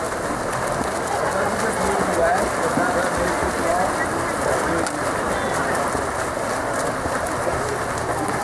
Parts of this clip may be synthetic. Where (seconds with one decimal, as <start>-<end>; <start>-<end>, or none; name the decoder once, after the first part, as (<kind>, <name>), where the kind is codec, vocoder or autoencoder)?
none